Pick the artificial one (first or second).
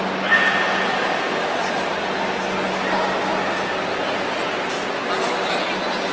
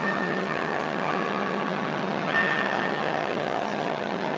second